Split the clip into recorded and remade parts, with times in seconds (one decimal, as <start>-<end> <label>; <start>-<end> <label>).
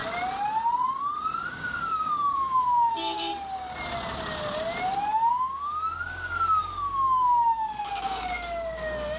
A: 0.0-1.5 recorded; 1.5-3.3 remade; 3.3-5.3 recorded; 5.3-9.2 remade